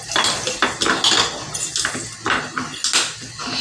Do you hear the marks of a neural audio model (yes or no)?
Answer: no